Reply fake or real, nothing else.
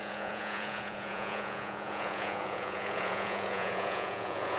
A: fake